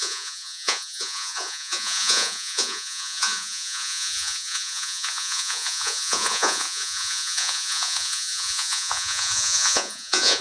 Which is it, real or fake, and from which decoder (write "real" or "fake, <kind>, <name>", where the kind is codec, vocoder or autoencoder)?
fake, vocoder, Vocos